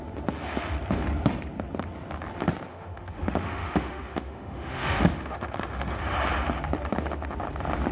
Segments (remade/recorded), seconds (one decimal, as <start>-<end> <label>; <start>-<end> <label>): 0.0-2.7 recorded; 2.7-6.0 remade; 6.0-7.9 recorded

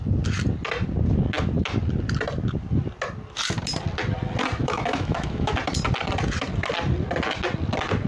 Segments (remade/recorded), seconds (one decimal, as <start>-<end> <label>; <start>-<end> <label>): 0.0-4.6 recorded; 4.6-5.5 remade; 5.5-8.1 recorded

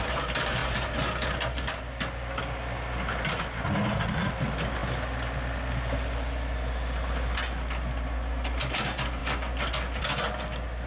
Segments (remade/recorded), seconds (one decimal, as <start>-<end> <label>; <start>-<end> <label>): 0.0-10.9 recorded